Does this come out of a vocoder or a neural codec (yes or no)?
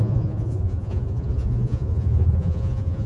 yes